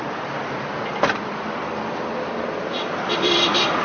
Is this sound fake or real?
fake